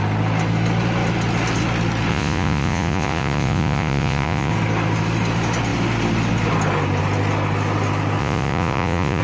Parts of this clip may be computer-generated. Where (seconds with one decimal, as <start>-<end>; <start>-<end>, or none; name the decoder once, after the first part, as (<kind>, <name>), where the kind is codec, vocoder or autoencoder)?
2.1-4.5 (vocoder, Vocos); 8.2-9.2